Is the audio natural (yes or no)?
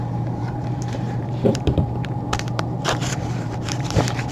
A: no